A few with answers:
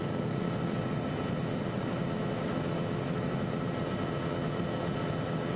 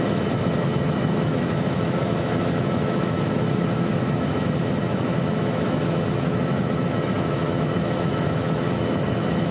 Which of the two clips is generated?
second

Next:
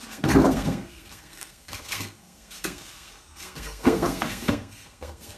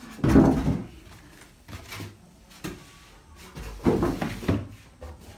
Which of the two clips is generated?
first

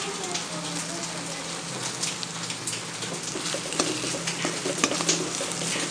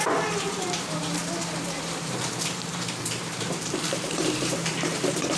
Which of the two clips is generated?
second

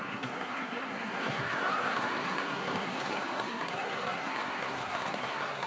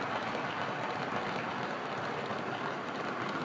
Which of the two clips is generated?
first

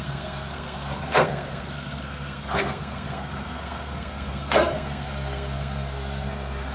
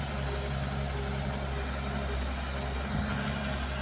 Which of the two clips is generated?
first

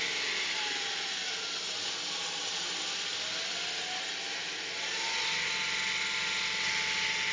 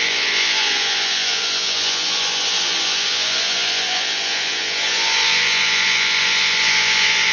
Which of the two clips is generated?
second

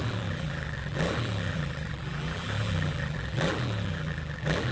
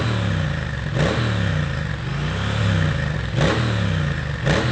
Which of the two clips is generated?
first